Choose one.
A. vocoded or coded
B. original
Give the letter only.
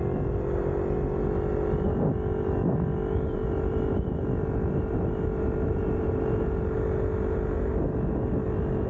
B